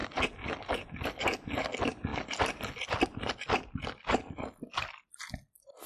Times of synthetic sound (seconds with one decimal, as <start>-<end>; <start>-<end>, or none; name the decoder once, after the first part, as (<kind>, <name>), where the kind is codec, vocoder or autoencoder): none